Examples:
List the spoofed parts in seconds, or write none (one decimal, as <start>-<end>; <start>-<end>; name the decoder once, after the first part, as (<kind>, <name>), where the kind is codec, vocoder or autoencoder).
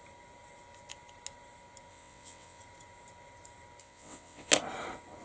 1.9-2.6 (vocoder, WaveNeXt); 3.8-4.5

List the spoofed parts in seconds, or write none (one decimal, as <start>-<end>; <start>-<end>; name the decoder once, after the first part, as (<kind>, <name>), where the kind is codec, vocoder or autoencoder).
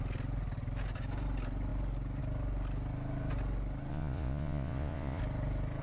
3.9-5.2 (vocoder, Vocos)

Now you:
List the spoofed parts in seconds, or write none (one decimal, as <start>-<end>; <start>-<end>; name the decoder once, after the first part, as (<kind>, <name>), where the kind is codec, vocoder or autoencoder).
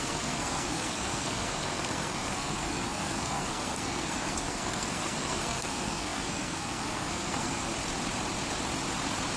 0.0-7.7 (codec, SNAC)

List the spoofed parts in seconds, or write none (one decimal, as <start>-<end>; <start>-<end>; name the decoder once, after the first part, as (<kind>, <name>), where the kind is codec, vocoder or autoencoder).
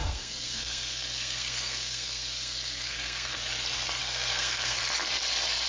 0.0-3.4 (codec, SNAC); 4.0-4.8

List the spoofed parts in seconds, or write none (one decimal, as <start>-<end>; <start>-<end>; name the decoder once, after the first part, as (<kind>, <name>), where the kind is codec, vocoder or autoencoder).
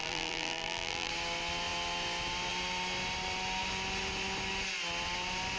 0.0-1.1 (vocoder, BigVGAN v2)